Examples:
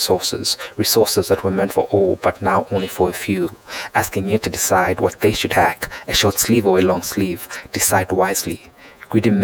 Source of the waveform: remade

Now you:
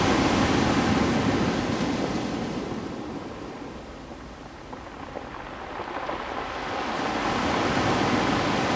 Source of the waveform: recorded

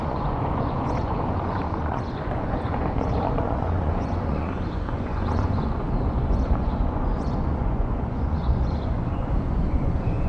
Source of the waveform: remade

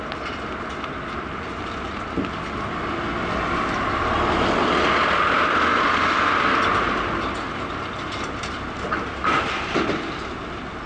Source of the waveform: recorded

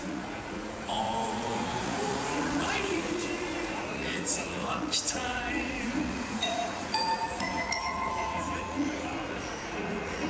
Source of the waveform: remade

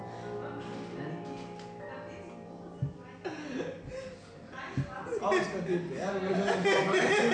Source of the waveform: recorded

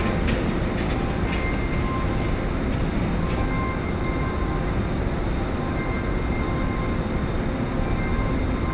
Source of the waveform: recorded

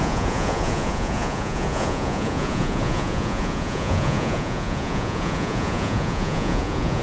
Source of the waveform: remade